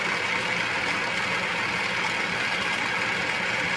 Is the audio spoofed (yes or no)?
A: no